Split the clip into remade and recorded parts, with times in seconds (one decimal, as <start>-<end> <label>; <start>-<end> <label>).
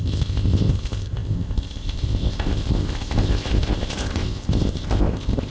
0.0-5.5 remade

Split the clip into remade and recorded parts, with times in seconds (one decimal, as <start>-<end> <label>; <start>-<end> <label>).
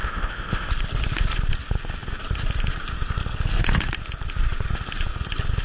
0.0-0.7 remade; 0.7-5.6 recorded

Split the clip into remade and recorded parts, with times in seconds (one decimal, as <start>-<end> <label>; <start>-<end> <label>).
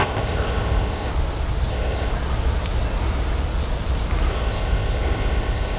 0.0-1.1 remade; 1.1-1.7 recorded; 1.7-2.1 remade; 2.1-4.3 recorded; 4.3-5.8 remade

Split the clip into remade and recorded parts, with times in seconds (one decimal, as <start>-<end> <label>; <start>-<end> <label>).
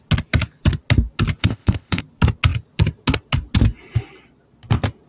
0.0-1.4 recorded; 1.4-2.0 remade; 2.0-5.1 recorded